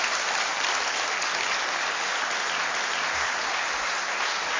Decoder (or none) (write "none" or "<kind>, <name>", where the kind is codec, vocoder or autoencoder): none